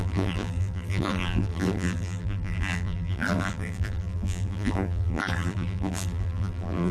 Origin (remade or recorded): remade